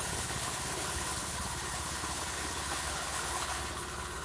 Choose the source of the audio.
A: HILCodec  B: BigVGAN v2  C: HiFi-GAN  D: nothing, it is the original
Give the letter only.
A